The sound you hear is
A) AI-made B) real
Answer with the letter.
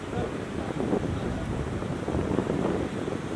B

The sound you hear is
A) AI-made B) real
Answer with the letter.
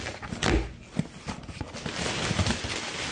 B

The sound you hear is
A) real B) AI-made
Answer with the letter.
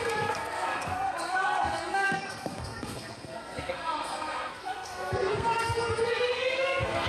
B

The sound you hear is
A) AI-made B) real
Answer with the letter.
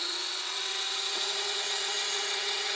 A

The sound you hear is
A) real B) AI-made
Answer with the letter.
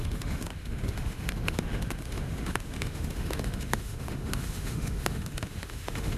B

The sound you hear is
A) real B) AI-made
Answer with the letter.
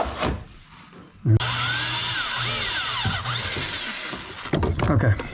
A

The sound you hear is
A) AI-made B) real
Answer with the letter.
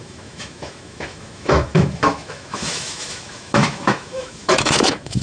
A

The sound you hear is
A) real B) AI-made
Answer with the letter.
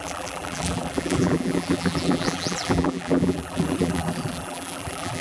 B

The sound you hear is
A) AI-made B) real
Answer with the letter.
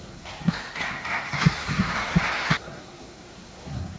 A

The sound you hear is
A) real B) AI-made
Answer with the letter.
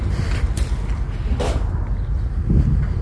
A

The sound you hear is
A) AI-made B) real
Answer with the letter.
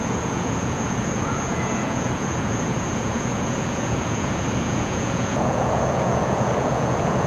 A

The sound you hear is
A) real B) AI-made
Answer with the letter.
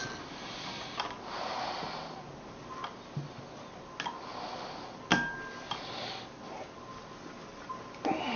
A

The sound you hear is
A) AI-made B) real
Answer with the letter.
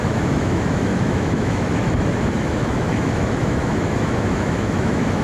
A